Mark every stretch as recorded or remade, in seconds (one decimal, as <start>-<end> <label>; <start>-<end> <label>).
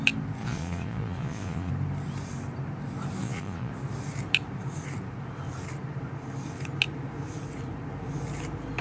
0.0-0.4 recorded; 0.4-1.7 remade; 1.7-3.2 recorded; 3.2-3.7 remade; 3.7-8.8 recorded